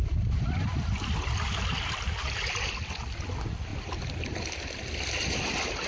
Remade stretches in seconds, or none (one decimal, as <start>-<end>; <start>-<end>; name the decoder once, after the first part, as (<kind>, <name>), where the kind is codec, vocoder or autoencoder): none